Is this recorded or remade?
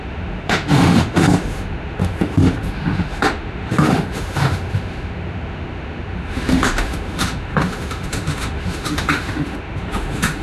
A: remade